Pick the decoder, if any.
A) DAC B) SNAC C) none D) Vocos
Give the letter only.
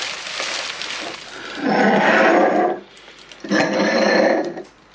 C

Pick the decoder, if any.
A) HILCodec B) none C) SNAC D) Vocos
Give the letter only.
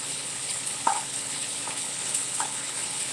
A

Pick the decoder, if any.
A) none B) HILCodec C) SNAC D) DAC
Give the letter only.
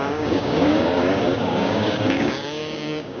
D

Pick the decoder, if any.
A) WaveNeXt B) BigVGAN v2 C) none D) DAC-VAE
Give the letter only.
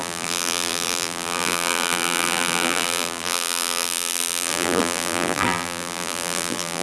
B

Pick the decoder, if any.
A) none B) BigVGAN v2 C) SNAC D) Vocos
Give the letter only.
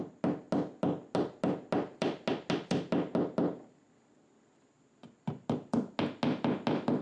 A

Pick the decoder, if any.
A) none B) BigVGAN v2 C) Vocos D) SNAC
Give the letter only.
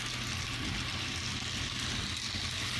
A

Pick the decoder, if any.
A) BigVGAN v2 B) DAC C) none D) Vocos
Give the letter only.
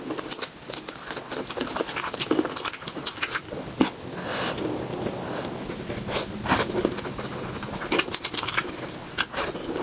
C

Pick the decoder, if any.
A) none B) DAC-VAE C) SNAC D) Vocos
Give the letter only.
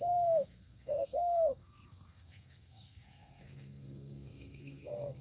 C